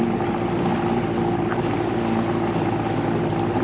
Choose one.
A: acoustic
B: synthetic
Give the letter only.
A